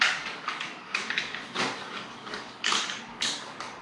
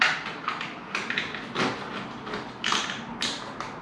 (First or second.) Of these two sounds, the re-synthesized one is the first